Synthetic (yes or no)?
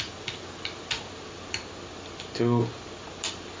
no